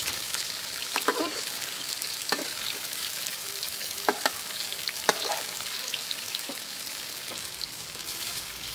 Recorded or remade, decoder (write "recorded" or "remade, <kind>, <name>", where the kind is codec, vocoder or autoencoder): remade, codec, DAC